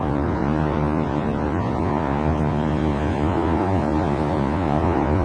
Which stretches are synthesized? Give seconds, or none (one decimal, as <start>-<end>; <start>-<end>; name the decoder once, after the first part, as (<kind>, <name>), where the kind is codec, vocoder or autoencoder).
0.0-5.2 (vocoder, Vocos)